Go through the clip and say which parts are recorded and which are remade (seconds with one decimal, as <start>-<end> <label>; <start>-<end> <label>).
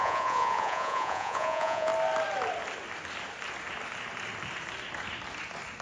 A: 0.0-1.9 remade; 1.9-5.8 recorded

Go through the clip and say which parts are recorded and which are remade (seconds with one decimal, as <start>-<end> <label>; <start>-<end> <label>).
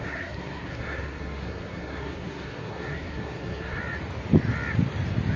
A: 0.0-3.8 remade; 3.8-5.4 recorded